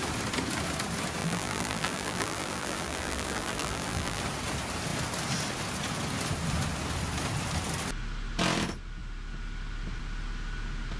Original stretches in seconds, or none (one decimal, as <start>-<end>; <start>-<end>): 0.0-1.2; 4.2-11.0